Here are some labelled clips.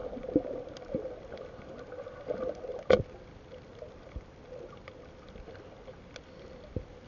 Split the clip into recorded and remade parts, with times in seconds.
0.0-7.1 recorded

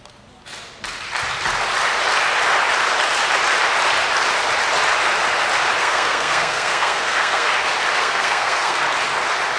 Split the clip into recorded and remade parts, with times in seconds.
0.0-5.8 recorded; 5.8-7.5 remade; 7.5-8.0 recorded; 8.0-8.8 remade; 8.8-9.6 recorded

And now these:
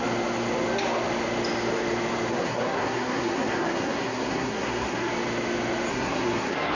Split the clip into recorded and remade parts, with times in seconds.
0.0-2.3 recorded; 2.3-5.1 remade; 5.1-5.9 recorded; 5.9-6.7 remade

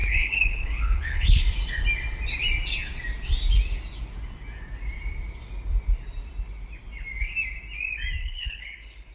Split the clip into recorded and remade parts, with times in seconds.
0.0-1.4 remade; 1.4-8.2 recorded; 8.2-9.1 remade